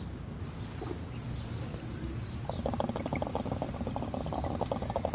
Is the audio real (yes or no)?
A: yes